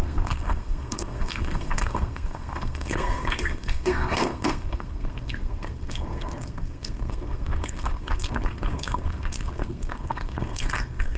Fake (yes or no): yes